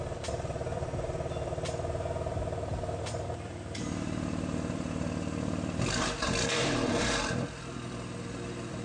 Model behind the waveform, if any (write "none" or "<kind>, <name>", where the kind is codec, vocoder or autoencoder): vocoder, BigVGAN v2